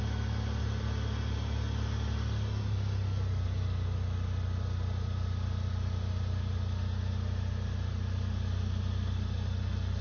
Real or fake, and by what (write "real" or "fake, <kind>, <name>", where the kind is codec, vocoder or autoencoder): real